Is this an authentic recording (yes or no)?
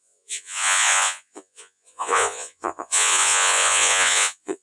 no